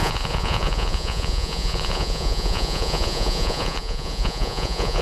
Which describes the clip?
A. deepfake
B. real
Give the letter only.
A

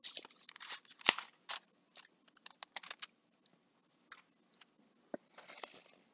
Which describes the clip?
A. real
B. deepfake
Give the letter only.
A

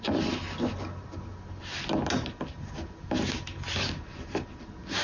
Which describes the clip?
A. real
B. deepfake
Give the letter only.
A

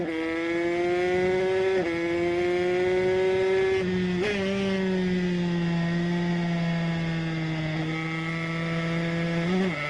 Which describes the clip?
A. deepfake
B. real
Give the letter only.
B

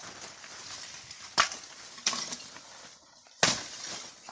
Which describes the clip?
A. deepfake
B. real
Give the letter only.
B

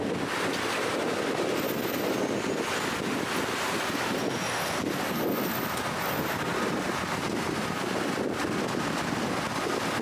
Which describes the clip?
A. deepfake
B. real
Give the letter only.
B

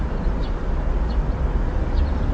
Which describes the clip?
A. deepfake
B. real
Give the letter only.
B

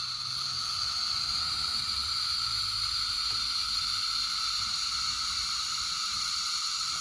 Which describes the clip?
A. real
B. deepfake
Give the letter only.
B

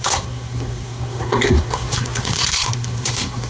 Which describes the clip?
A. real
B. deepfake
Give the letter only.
B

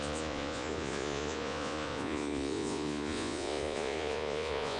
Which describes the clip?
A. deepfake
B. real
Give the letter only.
A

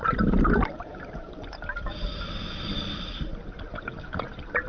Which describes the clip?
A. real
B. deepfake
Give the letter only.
A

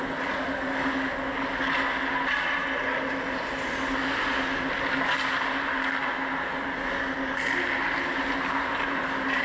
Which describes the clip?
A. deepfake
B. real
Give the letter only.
B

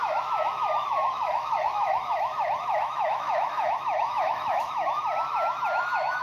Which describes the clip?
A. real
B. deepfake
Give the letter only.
B